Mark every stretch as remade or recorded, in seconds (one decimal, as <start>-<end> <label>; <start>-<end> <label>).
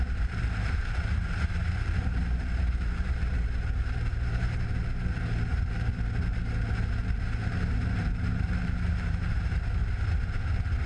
0.0-5.9 remade; 5.9-6.9 recorded; 6.9-9.8 remade; 9.8-10.9 recorded